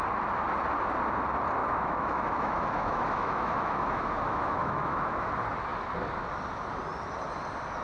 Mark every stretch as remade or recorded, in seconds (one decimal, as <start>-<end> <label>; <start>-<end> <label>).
0.0-1.6 recorded; 1.6-5.3 remade; 5.3-7.8 recorded